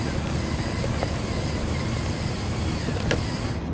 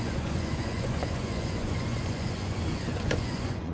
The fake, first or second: second